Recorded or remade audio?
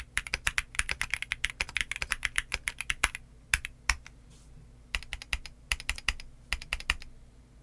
recorded